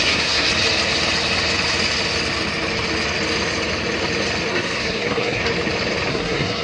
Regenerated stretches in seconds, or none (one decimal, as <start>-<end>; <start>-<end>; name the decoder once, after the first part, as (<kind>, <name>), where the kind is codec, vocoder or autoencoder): 0.0-0.5 (codec, SNAC); 4.5-5.4; 6.1-6.6

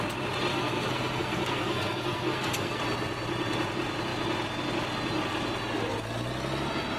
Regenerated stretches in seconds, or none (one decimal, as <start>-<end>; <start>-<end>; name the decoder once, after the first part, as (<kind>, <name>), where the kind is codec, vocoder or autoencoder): 0.5-2.8 (codec, SNAC)

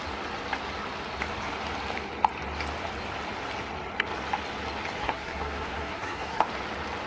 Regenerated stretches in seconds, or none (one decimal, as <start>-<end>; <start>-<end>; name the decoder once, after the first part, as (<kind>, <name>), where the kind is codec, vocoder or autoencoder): 5.0-6.4 (codec, SNAC)